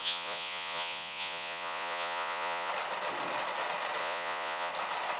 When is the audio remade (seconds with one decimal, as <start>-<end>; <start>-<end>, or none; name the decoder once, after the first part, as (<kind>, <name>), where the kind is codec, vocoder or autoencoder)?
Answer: 0.0-2.7 (vocoder, Vocos); 4.0-4.7